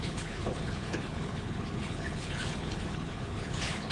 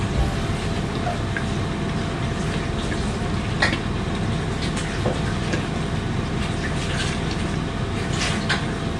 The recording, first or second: second